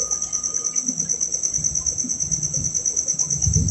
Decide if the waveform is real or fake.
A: real